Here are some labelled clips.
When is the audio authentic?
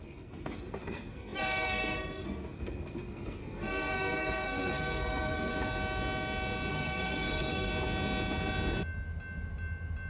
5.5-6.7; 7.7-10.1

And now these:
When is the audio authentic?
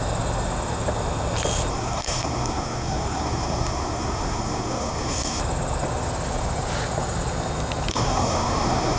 0.0-1.7; 5.4-7.9